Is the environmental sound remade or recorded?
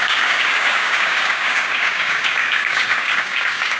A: remade